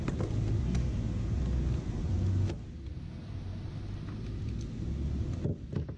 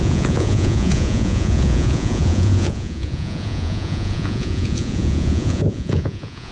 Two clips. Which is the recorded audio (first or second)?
first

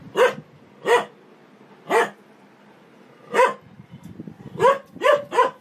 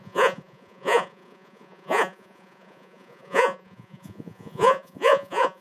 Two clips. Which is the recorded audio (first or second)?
first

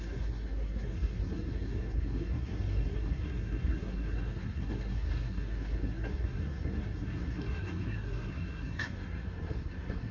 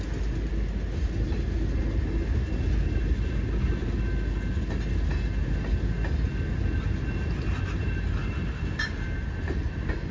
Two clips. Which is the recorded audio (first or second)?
second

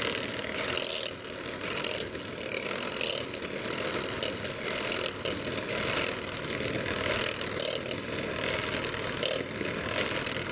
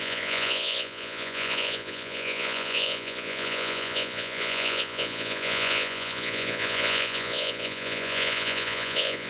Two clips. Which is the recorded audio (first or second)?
first